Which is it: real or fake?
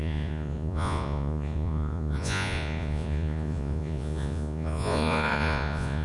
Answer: fake